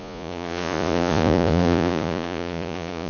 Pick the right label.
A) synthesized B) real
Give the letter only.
A